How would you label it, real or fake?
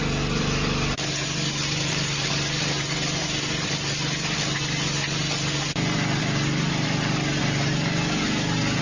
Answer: real